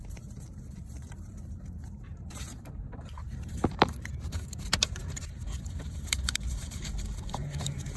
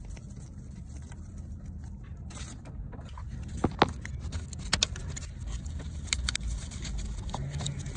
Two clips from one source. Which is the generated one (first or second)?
first